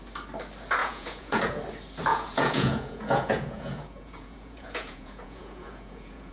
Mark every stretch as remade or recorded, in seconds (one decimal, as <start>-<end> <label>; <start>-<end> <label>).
0.0-0.8 recorded; 0.8-1.6 remade; 1.6-2.1 recorded; 2.1-6.3 remade